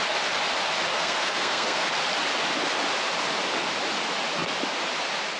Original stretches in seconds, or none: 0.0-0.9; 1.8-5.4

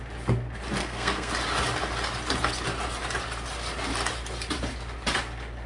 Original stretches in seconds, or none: 0.0-0.8; 1.3-5.7

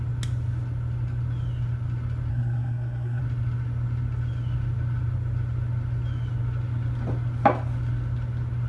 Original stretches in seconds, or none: 0.0-2.3; 3.2-8.7